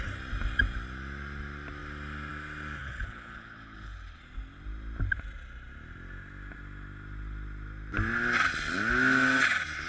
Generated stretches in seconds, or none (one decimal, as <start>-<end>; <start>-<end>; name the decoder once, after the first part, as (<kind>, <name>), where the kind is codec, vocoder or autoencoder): 2.8-4.2 (codec, HILCodec)